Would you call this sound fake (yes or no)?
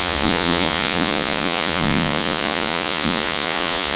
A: yes